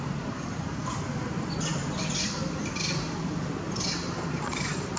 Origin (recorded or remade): recorded